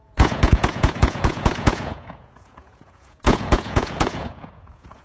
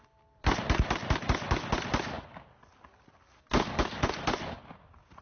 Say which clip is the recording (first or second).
second